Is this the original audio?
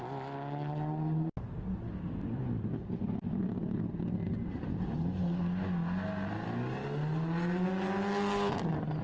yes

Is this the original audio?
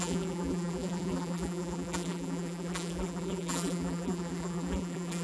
no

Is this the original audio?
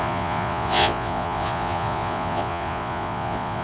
no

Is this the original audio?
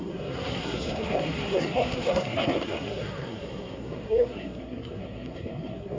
no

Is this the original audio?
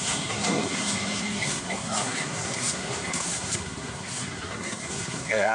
no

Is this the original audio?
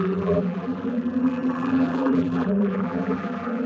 no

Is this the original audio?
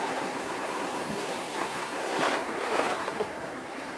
no